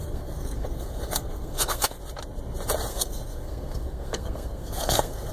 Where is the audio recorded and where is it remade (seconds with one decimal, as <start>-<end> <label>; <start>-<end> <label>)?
0.0-2.0 remade; 2.0-2.9 recorded; 2.9-5.3 remade